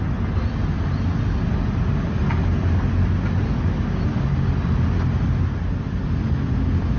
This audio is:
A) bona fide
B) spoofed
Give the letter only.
A